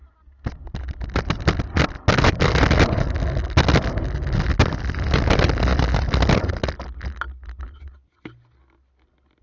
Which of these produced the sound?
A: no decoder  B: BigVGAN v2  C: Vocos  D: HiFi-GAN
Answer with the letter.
A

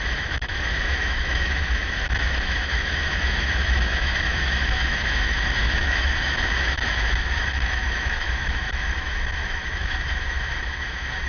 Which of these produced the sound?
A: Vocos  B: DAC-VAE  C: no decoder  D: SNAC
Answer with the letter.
B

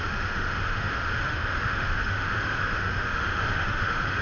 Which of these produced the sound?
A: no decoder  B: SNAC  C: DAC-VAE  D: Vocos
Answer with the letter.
C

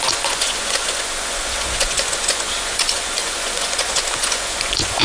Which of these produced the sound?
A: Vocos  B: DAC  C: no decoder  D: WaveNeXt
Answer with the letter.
A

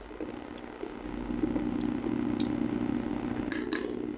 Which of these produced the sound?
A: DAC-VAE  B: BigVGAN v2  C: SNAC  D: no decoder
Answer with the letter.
D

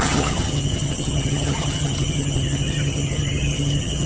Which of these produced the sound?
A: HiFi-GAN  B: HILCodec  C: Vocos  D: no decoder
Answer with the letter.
A